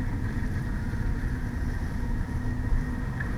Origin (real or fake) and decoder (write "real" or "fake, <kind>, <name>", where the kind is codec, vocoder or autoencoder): real